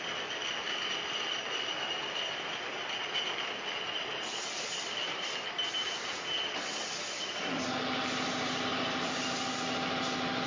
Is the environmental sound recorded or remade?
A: recorded